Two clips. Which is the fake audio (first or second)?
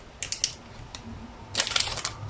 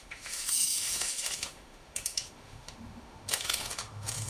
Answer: second